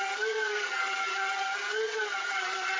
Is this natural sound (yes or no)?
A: no